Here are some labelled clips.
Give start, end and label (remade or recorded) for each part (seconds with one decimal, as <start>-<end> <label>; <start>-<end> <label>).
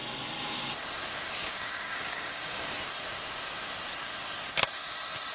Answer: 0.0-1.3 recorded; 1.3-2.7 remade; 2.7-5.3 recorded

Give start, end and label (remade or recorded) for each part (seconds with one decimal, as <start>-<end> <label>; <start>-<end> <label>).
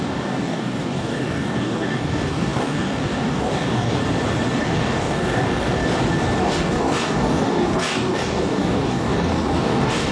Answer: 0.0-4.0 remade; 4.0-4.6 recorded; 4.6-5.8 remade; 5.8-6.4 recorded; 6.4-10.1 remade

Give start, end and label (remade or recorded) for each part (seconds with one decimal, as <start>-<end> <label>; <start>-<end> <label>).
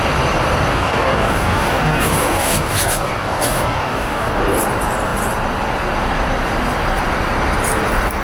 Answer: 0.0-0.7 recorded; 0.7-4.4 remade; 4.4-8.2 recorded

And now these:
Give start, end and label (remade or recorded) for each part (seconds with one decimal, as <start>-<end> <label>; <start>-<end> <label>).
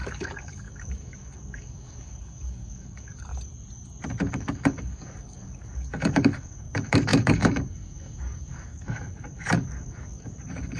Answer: 0.0-3.3 remade; 3.3-4.3 recorded; 4.3-10.8 remade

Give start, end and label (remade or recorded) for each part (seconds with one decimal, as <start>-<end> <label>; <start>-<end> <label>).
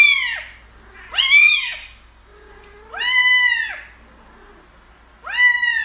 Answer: 0.0-1.4 recorded; 1.4-2.5 remade; 2.5-5.8 recorded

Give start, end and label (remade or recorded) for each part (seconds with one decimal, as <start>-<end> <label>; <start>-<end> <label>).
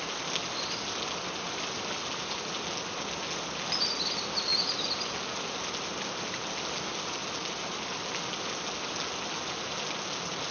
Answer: 0.0-10.5 recorded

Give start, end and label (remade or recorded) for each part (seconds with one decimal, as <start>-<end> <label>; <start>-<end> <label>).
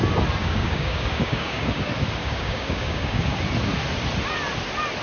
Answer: 0.0-0.4 recorded; 0.4-1.8 remade; 1.8-2.2 recorded; 2.2-3.2 remade; 3.2-5.0 recorded